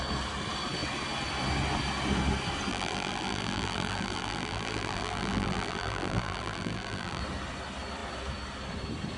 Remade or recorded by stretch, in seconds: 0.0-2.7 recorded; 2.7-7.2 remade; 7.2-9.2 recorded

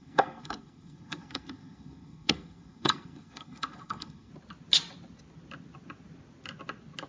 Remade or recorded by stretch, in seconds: 0.0-4.3 remade; 4.3-7.1 recorded

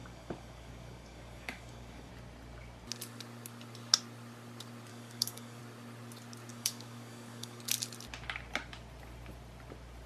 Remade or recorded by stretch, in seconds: 0.0-2.1 remade; 2.1-4.9 recorded; 4.9-5.6 remade; 5.6-6.5 recorded; 6.5-7.6 remade; 7.6-10.1 recorded

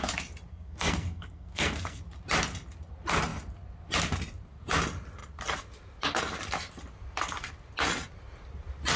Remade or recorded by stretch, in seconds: 0.0-0.5 recorded; 0.5-2.0 remade; 2.0-9.0 recorded